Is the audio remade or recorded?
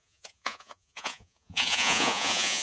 remade